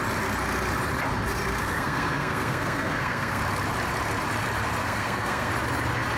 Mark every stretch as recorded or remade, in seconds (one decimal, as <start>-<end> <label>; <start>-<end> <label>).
0.0-1.6 recorded; 1.6-3.4 remade; 3.4-4.8 recorded; 4.8-5.5 remade; 5.5-6.2 recorded